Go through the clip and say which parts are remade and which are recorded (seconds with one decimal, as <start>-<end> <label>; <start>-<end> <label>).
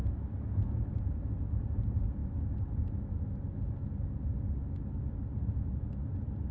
0.0-6.5 recorded